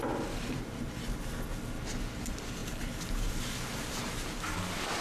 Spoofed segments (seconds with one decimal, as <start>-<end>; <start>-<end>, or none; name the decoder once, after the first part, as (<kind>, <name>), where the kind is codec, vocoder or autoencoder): 2.6-3.3 (vocoder, BigVGAN v2)